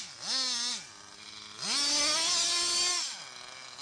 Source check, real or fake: real